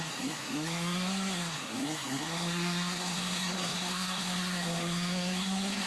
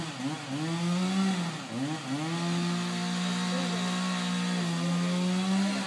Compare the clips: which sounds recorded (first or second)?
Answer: second